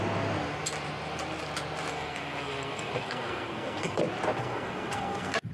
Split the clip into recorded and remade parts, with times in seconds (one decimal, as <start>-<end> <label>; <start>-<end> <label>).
0.0-1.9 recorded; 1.9-4.0 remade; 4.0-4.4 recorded; 4.4-5.5 remade